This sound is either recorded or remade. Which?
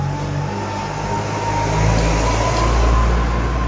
recorded